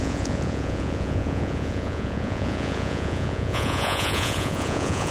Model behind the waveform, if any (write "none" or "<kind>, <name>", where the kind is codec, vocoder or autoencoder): vocoder, Vocos